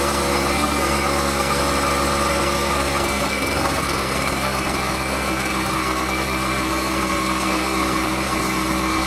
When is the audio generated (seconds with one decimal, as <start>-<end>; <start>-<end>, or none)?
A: 0.0-1.6; 2.3-9.1